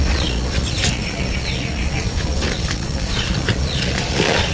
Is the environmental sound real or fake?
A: fake